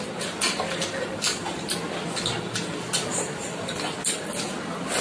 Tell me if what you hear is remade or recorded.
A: recorded